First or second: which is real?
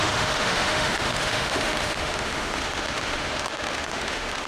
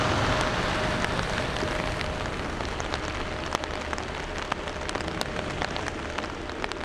second